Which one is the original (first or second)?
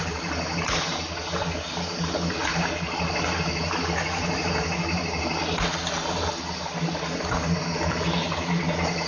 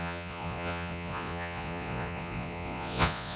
first